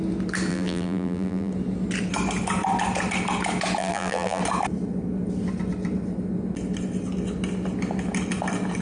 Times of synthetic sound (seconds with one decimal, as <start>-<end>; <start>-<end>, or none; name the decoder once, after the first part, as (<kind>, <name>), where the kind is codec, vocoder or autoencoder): 0.5-1.5 (vocoder, BigVGAN v2); 3.8-4.4

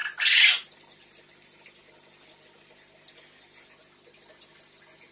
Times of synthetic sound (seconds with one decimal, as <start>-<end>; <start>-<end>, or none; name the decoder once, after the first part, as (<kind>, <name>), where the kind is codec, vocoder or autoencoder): none